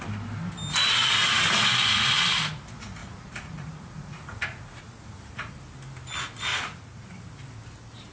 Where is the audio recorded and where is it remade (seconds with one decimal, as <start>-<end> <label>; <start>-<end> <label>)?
0.0-3.0 recorded; 3.0-5.5 remade; 5.5-6.5 recorded; 6.5-7.2 remade; 7.2-8.1 recorded